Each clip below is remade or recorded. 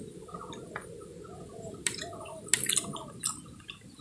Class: recorded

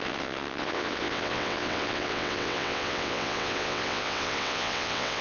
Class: remade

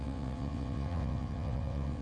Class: remade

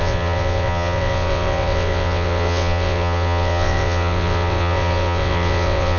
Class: remade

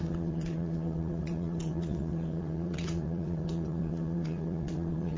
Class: remade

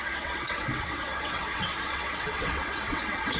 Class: remade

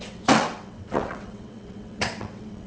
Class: remade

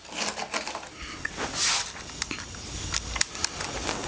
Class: recorded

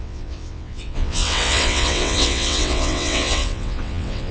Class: remade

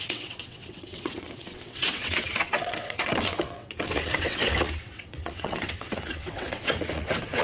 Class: remade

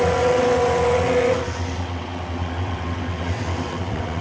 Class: remade